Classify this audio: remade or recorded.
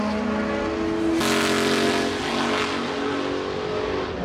recorded